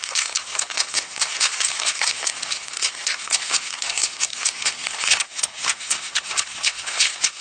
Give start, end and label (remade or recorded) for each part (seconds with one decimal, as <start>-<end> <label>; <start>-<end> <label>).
0.0-7.4 remade